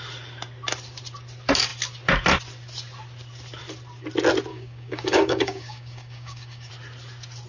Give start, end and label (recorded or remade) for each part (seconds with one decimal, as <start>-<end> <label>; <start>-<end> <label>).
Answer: 0.0-4.5 recorded; 4.5-6.7 remade; 6.7-7.5 recorded